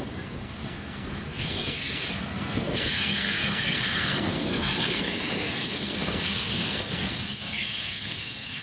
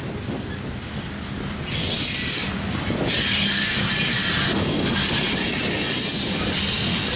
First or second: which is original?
second